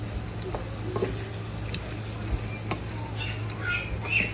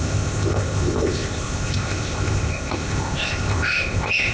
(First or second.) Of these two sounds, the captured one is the first